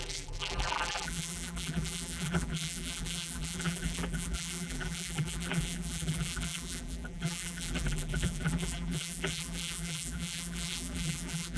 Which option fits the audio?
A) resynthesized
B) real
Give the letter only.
A